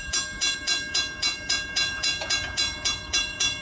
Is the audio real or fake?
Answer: fake